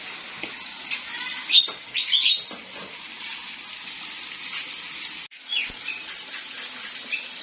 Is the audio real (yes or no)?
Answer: yes